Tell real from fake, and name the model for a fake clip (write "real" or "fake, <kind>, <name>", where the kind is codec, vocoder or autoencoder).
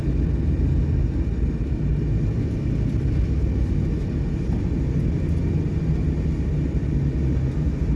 real